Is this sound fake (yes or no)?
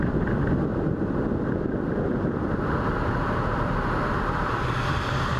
no